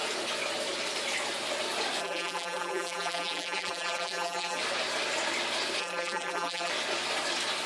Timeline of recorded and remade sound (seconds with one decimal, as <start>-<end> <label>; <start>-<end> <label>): 0.0-2.0 recorded; 2.0-4.6 remade; 4.6-5.8 recorded; 5.8-6.7 remade; 6.7-7.7 recorded